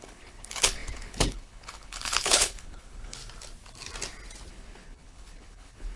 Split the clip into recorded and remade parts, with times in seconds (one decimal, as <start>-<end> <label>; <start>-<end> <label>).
0.0-3.2 remade; 3.2-4.5 recorded; 4.5-6.0 remade